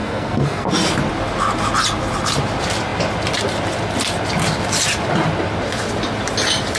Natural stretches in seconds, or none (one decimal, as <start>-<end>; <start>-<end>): 0.7-6.8